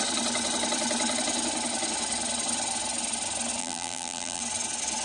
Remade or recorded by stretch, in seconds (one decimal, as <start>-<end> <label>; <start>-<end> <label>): 0.0-3.6 recorded; 3.6-4.4 remade; 4.4-5.0 recorded